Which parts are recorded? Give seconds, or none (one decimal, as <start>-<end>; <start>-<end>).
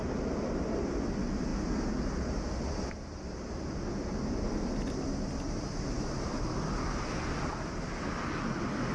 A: 0.0-8.9